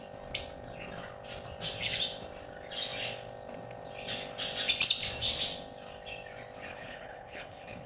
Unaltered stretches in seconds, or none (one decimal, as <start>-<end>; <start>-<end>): 0.0-6.7